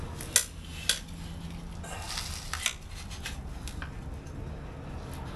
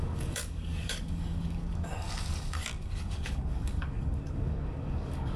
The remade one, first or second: second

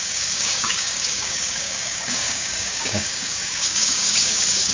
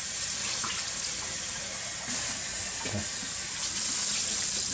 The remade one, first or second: first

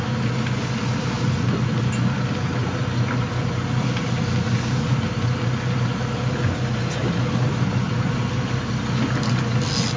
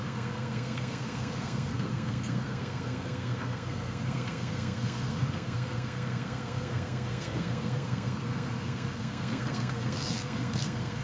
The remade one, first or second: second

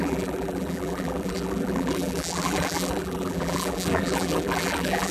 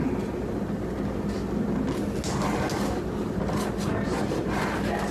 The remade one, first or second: first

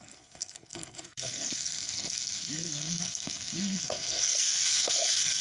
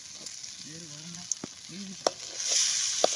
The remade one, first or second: first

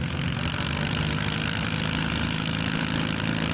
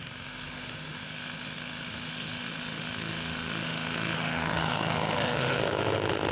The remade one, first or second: second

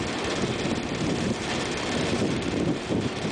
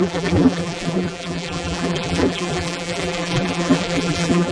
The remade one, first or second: second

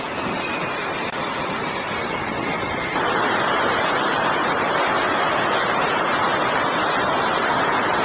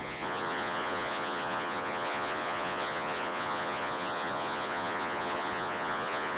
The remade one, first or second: second